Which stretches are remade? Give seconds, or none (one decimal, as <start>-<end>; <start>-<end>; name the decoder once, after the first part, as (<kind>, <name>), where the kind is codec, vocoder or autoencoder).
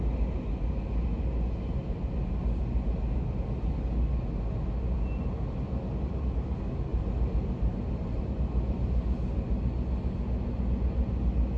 6.9-8.2 (vocoder, BigVGAN v2)